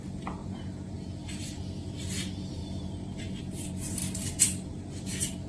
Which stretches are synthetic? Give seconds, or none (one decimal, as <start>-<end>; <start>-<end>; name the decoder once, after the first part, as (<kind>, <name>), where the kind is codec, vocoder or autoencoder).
none